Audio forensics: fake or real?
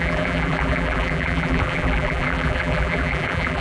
fake